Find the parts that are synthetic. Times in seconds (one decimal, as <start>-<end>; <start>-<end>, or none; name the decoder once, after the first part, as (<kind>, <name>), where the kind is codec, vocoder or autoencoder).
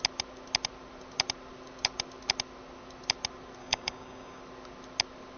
3.6-4.4 (codec, DAC)